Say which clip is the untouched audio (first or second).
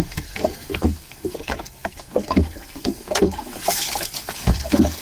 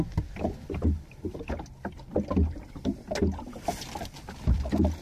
second